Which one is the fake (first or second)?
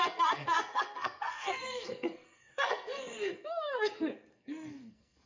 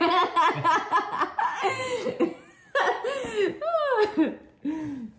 first